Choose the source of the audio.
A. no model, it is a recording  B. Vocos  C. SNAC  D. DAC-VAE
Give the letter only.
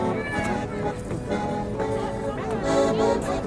A